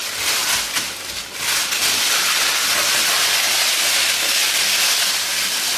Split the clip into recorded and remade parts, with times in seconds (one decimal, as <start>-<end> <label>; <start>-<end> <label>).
0.0-5.8 recorded